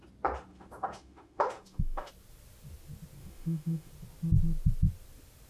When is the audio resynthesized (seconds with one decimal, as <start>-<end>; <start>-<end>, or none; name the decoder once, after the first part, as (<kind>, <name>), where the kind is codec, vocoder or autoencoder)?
0.5-2.1 (autoencoder, DAC-VAE); 3.2-3.9